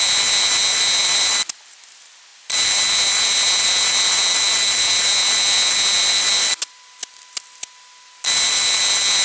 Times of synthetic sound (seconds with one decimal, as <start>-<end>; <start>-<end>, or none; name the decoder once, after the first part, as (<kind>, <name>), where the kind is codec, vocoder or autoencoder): none